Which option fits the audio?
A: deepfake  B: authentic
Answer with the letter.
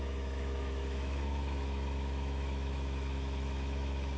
A